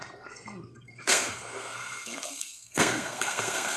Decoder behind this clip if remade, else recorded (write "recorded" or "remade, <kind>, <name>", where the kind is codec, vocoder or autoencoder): remade, codec, SNAC